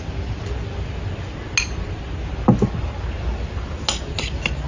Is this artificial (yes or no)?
no